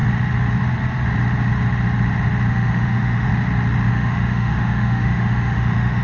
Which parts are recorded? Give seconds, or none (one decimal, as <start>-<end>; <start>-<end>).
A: 0.0-2.5; 3.3-3.9